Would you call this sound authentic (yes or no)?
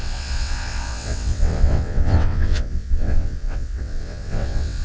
no